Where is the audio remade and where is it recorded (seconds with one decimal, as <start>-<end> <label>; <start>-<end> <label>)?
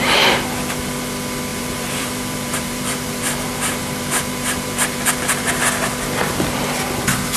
0.0-1.5 recorded; 1.5-5.5 remade; 5.5-7.4 recorded